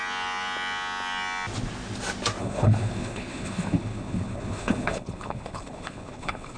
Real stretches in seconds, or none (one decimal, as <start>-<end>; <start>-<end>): 0.0-2.4